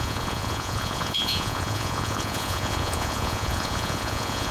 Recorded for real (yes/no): no